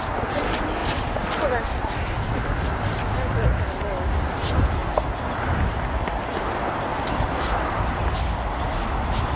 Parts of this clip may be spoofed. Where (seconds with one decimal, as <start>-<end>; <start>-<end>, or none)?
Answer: none